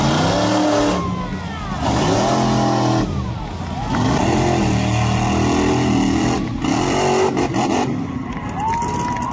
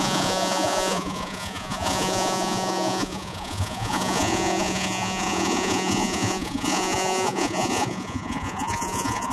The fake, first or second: second